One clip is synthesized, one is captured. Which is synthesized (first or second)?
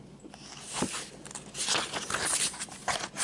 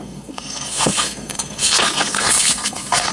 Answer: second